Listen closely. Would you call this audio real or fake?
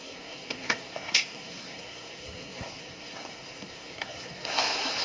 fake